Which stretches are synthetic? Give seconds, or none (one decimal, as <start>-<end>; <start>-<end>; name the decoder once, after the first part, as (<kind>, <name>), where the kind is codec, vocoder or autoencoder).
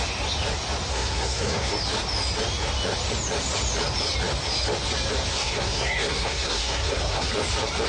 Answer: 0.9-1.7 (codec, SNAC); 5.3-7.3